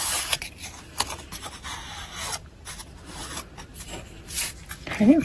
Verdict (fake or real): fake